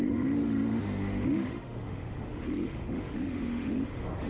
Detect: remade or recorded remade